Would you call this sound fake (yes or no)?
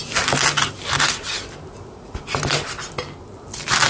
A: no